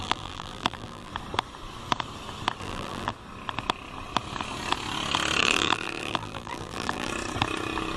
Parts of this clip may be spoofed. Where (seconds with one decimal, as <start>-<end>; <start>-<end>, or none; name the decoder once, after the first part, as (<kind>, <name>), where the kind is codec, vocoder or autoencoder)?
0.0-1.1 (vocoder, BigVGAN v2); 2.6-3.1; 5.4-7.1